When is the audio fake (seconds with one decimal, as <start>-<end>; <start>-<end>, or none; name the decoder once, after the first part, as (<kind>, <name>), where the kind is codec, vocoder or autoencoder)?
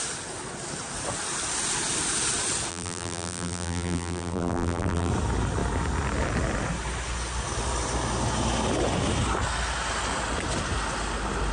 2.7-5.1 (vocoder, BigVGAN v2)